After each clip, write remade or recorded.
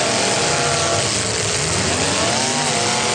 recorded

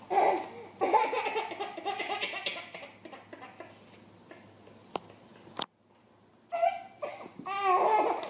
recorded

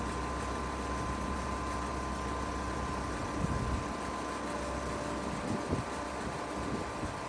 recorded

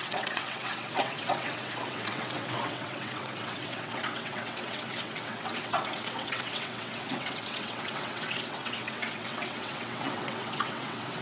remade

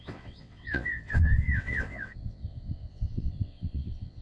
remade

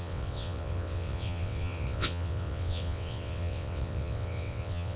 remade